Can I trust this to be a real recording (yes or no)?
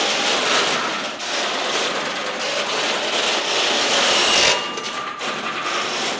yes